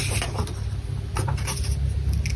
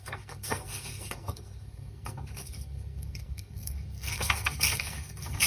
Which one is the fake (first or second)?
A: second